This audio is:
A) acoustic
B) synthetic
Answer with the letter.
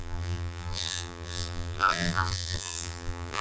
B